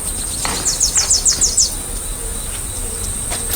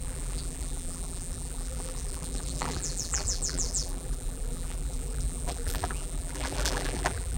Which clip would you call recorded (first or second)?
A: first